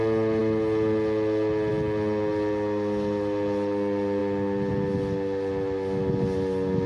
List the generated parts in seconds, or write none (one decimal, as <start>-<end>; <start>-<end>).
none